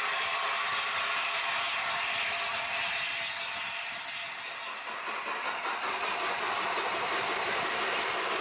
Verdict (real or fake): real